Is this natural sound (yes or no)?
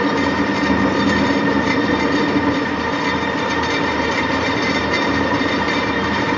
no